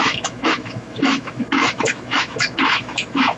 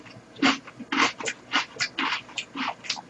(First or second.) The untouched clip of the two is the second